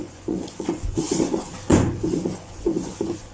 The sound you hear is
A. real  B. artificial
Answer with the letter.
B